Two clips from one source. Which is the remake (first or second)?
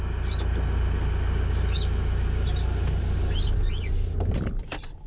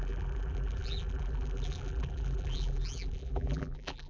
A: second